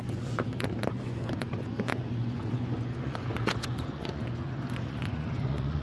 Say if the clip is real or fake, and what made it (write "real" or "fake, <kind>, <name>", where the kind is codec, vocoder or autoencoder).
fake, vocoder, Vocos